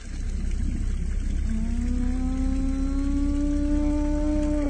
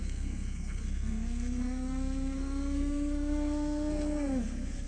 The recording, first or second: first